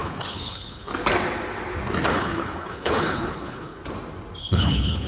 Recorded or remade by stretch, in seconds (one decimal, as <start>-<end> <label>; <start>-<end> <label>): 0.0-0.9 remade; 0.9-2.1 recorded; 2.1-3.8 remade; 3.8-4.4 recorded; 4.4-5.1 remade